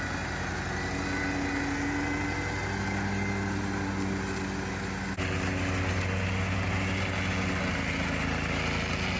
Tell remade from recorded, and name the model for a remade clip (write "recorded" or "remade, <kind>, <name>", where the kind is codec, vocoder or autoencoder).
recorded